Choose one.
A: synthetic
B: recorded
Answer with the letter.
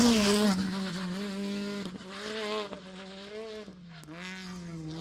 B